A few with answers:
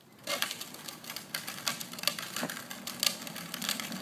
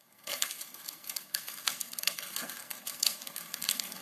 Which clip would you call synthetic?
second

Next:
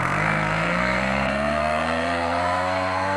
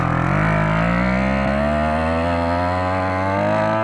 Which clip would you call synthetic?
first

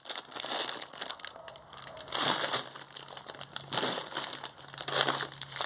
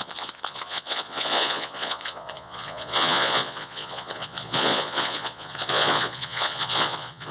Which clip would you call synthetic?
second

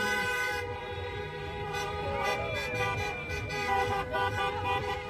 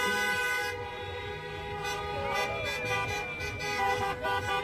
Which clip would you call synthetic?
first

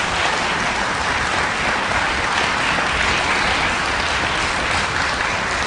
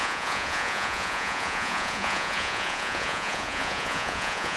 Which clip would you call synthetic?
second